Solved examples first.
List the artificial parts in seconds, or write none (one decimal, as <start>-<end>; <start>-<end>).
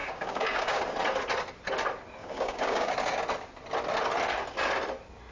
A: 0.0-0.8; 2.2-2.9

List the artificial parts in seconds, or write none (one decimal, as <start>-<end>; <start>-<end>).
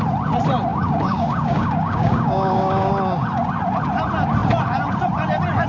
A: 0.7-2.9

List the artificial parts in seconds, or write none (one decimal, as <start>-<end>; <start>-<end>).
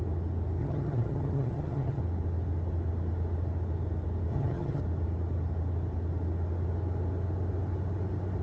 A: 0.6-2.0; 4.3-4.8